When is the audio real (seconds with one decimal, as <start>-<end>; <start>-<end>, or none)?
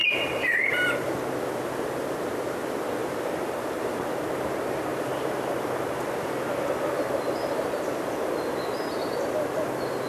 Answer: 0.6-3.0; 4.1-4.9; 9.2-10.1